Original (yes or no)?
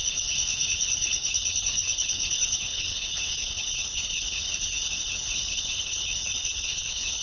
no